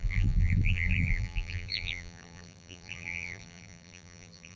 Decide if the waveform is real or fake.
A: fake